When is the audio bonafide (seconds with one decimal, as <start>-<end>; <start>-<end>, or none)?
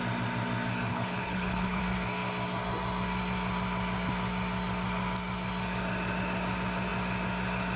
0.0-0.9; 1.8-7.8